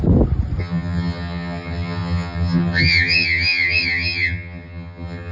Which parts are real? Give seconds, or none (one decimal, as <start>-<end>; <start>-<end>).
0.0-0.6